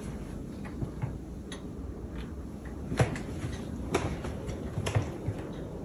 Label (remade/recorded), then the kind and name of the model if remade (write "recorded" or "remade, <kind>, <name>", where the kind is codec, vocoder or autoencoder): recorded